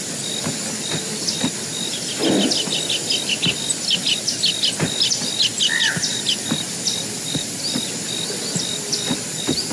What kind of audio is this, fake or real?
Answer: real